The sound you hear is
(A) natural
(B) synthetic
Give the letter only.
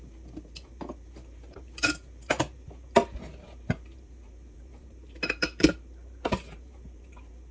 B